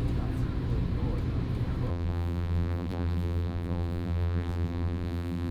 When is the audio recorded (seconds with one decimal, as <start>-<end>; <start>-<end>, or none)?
0.0-1.9